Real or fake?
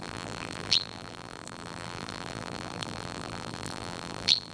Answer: fake